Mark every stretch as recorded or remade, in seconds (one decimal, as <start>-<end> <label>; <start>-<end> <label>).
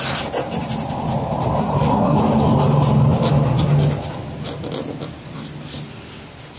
0.0-1.6 recorded; 1.6-2.2 remade; 2.2-6.6 recorded